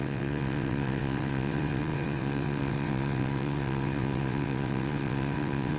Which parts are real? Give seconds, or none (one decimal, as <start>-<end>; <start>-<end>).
none

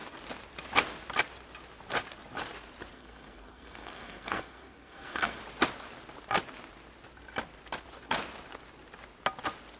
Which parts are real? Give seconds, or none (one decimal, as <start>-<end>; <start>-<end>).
0.0-2.9; 5.4-9.8

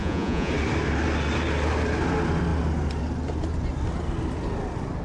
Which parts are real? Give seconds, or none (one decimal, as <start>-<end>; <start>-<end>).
0.5-5.0

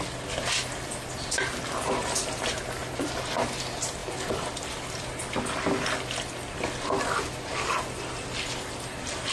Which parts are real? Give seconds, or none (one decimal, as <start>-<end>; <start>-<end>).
0.0-9.3

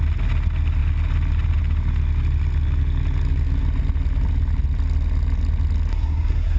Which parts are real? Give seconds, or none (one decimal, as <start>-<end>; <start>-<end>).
0.0-5.9

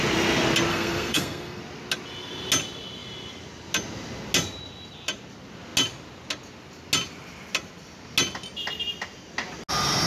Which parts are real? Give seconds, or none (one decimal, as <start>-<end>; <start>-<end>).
0.0-0.7; 1.6-10.1